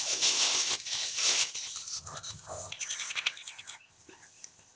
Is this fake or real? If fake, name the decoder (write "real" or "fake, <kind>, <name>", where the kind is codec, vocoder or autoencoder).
fake, codec, ZipCodec